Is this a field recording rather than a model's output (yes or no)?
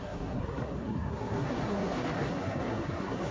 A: no